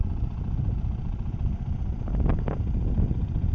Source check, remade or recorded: recorded